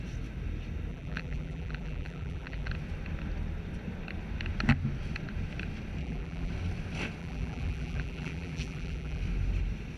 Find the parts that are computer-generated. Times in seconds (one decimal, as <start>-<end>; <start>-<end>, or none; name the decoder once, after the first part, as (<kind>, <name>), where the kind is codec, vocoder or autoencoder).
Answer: 0.9-2.7 (vocoder, BigVGAN v2); 6.0-6.5; 7.2-9.2